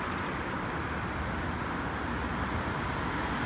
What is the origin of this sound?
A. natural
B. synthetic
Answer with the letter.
A